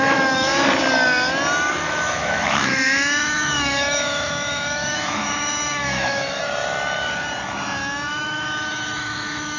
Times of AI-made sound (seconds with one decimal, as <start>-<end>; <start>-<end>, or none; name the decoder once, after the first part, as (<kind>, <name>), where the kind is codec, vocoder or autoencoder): 0.0-0.5 (autoencoder, DAC-VAE); 1.7-6.4; 8.1-9.6